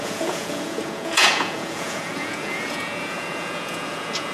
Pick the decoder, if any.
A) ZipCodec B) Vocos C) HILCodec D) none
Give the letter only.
B